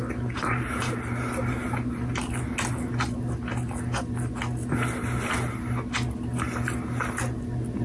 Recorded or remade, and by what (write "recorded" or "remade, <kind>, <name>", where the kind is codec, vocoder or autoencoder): recorded